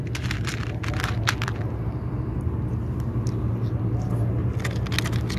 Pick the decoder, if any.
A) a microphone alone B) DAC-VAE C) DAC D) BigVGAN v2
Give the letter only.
A